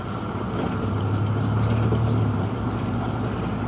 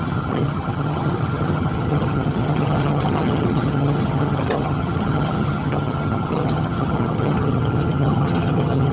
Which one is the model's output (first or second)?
second